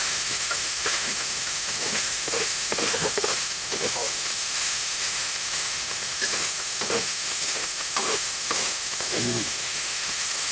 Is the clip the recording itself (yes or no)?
no